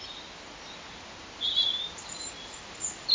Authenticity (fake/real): real